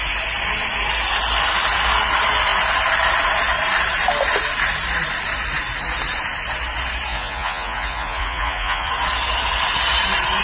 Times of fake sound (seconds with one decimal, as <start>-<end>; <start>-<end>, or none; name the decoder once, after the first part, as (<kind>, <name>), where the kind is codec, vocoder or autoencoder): 7.1-8.9 (vocoder, Vocos)